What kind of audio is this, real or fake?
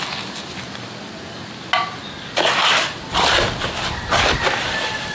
real